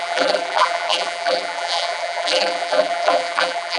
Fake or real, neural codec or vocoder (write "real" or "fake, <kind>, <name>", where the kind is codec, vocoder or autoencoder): fake, vocoder, BigVGAN v2